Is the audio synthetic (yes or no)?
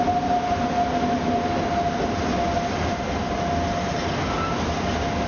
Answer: no